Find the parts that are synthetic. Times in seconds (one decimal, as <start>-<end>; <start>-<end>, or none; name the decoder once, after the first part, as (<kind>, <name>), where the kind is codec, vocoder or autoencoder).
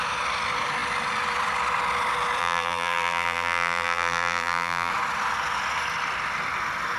2.4-4.9 (vocoder, BigVGAN v2)